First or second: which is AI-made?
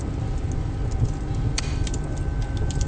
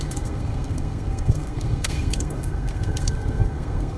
second